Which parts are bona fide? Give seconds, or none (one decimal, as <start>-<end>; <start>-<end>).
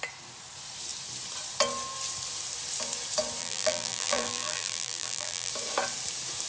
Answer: 0.0-3.4; 5.5-6.5